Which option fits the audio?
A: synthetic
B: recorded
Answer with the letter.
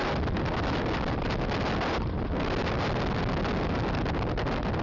B